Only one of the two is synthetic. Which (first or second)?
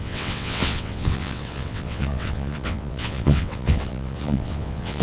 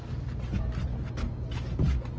first